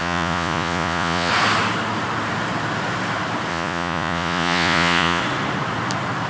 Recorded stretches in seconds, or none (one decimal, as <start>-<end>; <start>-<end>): 1.3-3.5; 5.2-6.3